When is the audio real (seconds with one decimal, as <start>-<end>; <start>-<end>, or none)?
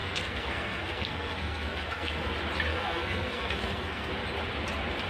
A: 2.3-2.7; 4.1-5.1